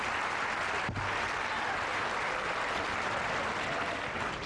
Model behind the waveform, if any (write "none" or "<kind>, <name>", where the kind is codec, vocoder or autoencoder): none